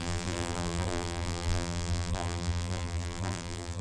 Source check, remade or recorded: remade